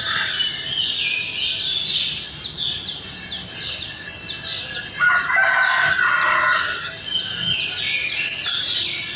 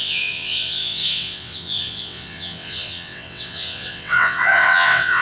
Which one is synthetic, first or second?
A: second